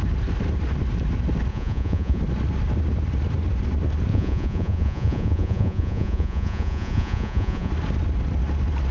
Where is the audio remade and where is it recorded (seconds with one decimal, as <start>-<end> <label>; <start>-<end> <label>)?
0.0-1.5 recorded; 1.5-2.2 remade; 2.2-4.1 recorded; 4.1-7.7 remade; 7.7-8.9 recorded

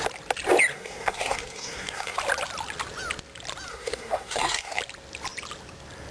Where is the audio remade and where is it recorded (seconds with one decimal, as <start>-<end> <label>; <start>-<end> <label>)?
0.0-0.7 recorded; 0.7-2.2 remade; 2.2-3.7 recorded; 3.7-4.8 remade; 4.8-6.1 recorded

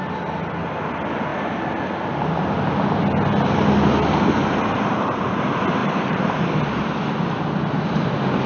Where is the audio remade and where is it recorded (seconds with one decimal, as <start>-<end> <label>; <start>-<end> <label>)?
0.0-5.8 recorded; 5.8-6.9 remade; 6.9-8.5 recorded

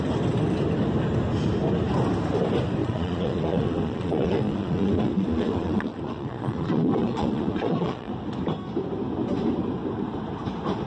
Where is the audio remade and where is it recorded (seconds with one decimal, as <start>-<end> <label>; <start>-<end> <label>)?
0.0-2.8 recorded; 2.8-8.1 remade; 8.1-10.9 recorded

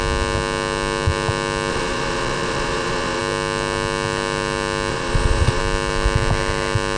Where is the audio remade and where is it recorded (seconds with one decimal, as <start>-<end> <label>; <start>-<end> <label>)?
0.0-1.7 recorded; 1.7-3.2 remade; 3.2-4.9 recorded; 4.9-5.6 remade; 5.6-7.0 recorded

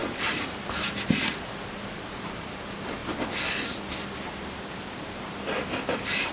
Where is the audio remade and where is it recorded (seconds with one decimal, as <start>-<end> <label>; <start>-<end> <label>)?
0.0-6.3 recorded